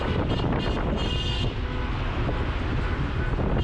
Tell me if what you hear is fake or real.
real